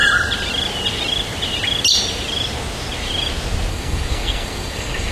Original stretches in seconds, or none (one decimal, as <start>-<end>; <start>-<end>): 0.0-3.7